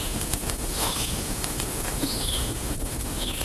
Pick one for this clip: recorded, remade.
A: remade